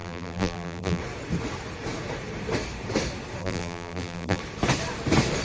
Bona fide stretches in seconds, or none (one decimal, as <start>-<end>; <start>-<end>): 1.0-3.4; 4.4-5.4